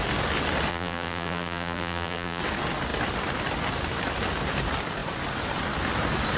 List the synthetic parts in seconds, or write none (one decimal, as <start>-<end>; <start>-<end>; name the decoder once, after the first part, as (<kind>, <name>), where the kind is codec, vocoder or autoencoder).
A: 0.7-2.4 (vocoder, BigVGAN v2)